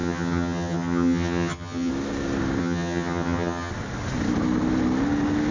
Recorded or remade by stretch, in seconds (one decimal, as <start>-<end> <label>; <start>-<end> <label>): 0.0-1.9 remade; 1.9-2.6 recorded; 2.6-3.7 remade; 3.7-5.5 recorded

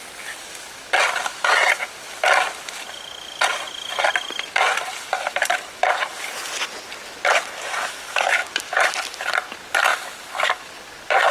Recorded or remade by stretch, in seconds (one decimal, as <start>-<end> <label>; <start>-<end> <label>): 0.0-4.9 recorded; 4.9-6.2 remade; 6.2-8.4 recorded; 8.4-8.9 remade; 8.9-11.3 recorded

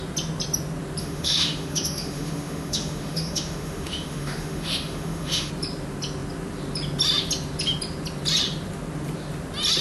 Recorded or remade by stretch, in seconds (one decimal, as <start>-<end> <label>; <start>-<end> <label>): 0.0-1.0 recorded; 1.0-5.5 remade; 5.5-9.8 recorded

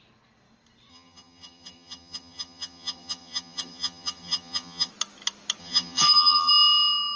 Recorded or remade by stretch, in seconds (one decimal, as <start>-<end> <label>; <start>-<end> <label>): 0.0-0.9 recorded; 0.9-4.9 remade; 4.9-5.6 recorded; 5.6-6.5 remade; 6.5-7.2 recorded

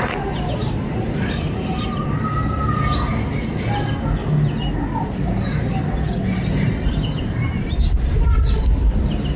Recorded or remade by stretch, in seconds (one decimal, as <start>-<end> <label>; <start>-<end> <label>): 0.0-0.6 recorded; 0.6-2.1 remade; 2.1-6.4 recorded; 6.4-9.0 remade; 9.0-9.4 recorded

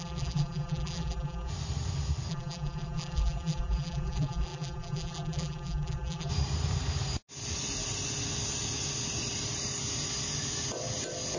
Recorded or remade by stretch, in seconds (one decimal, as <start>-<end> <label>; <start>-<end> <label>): 0.0-1.5 remade; 1.5-2.3 recorded; 2.3-6.3 remade; 6.3-11.4 recorded

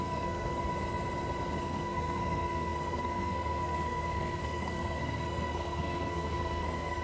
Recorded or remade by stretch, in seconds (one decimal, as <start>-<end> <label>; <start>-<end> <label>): 0.0-0.7 remade; 0.7-1.6 recorded; 1.6-7.0 remade

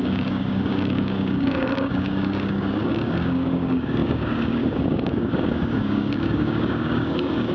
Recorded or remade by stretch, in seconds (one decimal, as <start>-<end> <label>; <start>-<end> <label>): 0.0-7.5 remade